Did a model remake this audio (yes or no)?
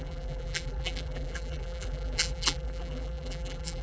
yes